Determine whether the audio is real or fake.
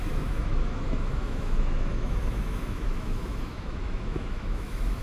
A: fake